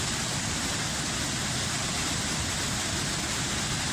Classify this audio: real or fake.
real